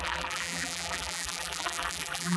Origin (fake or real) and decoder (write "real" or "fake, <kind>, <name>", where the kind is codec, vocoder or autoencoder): fake, vocoder, BigVGAN v2